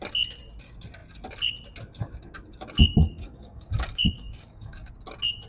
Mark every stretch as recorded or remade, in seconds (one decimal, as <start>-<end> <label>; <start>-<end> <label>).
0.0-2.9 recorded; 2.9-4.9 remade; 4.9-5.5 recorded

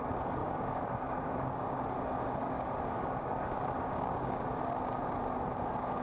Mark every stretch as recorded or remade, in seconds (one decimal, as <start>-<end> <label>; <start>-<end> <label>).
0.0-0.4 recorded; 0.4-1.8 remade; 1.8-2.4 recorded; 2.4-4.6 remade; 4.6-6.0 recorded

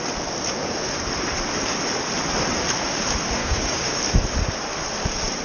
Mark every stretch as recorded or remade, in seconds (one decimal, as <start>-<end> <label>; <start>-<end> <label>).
0.0-3.4 recorded; 3.4-4.0 remade; 4.0-5.4 recorded